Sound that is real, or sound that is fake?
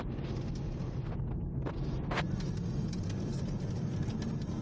real